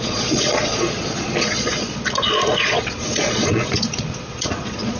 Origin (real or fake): fake